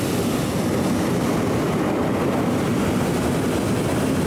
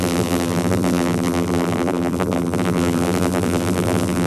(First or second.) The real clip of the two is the first